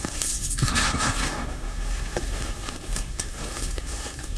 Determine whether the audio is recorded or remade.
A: remade